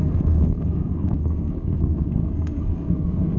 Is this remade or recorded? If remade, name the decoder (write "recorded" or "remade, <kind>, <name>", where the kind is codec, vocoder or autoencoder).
remade, codec, SNAC